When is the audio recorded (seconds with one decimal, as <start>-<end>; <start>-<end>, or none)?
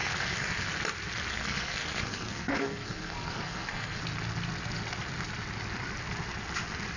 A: 0.8-1.3; 4.0-7.0